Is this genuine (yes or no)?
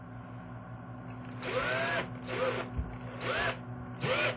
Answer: yes